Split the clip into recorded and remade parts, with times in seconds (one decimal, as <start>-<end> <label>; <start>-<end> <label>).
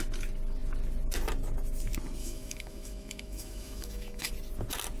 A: 0.0-2.2 recorded; 2.2-4.3 remade; 4.3-5.0 recorded